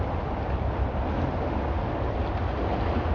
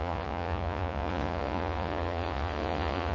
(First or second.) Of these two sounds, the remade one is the second